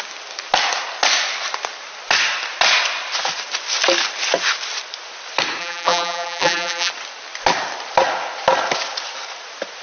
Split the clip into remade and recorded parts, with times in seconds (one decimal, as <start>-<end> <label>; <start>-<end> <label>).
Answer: 0.0-5.6 recorded; 5.6-6.9 remade; 6.9-9.8 recorded